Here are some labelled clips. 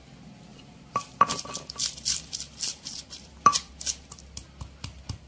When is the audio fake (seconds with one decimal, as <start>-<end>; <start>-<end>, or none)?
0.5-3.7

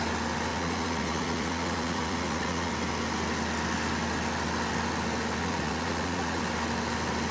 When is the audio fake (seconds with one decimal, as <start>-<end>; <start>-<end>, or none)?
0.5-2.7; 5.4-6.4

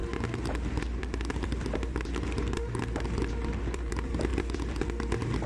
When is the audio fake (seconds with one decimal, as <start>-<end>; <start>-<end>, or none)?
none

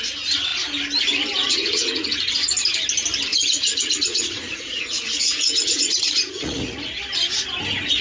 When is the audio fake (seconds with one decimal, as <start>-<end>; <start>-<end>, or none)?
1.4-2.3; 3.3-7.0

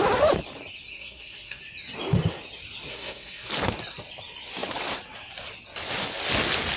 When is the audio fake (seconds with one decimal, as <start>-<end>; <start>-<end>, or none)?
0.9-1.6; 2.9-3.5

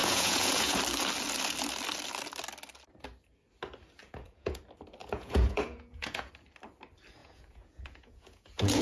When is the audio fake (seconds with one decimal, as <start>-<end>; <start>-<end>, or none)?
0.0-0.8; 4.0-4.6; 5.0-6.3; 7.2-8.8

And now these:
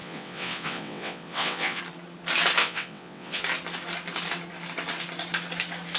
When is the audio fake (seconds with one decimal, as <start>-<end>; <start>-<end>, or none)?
0.0-1.8; 2.6-3.4